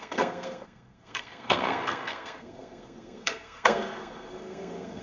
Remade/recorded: remade